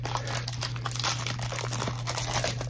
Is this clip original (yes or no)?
yes